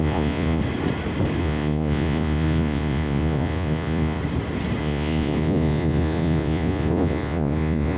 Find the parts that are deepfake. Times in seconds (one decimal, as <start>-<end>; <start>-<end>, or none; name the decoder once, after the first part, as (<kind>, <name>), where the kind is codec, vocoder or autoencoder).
0.0-0.6 (vocoder, Vocos); 1.4-4.2; 4.8-8.0